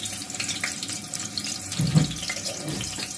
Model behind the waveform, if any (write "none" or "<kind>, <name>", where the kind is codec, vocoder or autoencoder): vocoder, BigVGAN v2